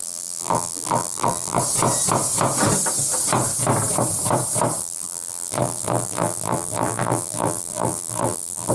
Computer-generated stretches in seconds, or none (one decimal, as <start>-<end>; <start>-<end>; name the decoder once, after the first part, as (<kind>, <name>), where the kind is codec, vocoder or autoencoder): 0.0-1.6 (vocoder, BigVGAN v2); 4.8-8.7